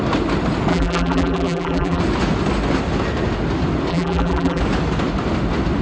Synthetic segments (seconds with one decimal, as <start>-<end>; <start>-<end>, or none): 0.7-2.0; 3.9-4.6